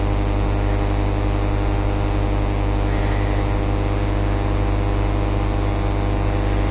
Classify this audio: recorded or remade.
recorded